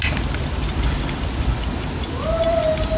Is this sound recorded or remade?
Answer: recorded